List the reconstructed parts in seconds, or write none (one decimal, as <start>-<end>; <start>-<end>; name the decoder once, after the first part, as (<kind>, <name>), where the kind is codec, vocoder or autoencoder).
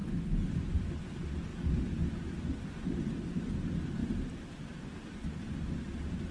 none